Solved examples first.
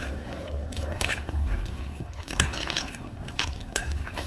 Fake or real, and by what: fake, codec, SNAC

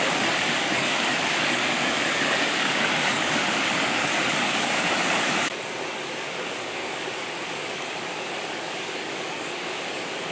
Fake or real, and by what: fake, codec, DAC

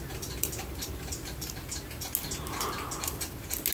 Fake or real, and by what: real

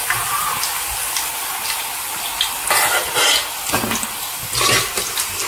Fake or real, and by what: real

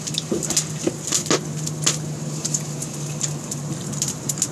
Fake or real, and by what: real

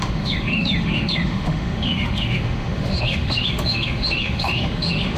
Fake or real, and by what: fake, autoencoder, DAC-VAE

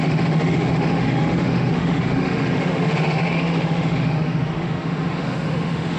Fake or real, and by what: fake, autoencoder, DAC-VAE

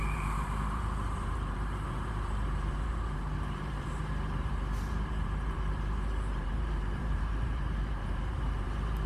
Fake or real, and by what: fake, vocoder, BigVGAN v2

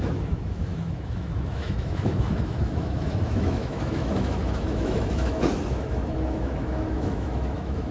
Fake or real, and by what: fake, autoencoder, DAC-VAE